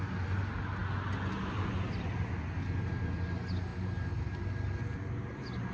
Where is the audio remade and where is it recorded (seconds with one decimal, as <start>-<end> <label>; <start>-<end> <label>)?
0.0-5.7 recorded